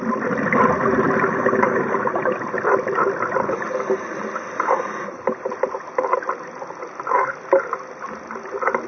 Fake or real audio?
real